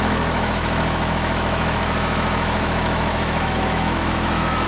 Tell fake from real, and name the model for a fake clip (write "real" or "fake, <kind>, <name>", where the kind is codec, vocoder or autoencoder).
fake, autoencoder, DAC-VAE